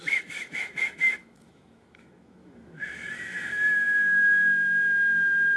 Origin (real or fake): fake